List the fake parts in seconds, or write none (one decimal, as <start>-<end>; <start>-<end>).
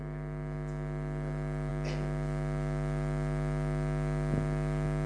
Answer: none